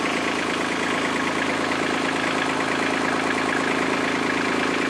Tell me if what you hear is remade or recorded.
recorded